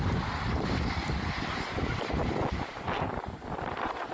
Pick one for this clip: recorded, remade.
recorded